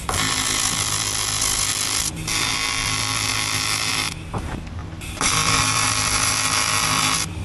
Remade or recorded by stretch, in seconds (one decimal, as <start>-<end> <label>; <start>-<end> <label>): 0.0-4.8 recorded; 4.8-5.6 remade; 5.6-7.4 recorded

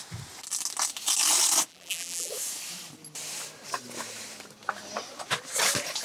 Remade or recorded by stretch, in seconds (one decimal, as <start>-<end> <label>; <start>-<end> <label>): 0.0-1.7 recorded; 1.7-2.3 remade; 2.3-6.0 recorded

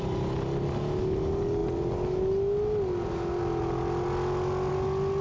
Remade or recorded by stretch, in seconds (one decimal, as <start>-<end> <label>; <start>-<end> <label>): 0.0-5.2 recorded

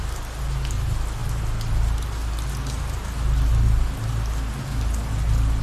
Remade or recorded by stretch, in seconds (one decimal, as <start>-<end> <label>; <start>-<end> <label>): 0.0-5.6 recorded